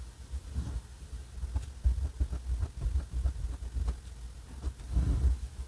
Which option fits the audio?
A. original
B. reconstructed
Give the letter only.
A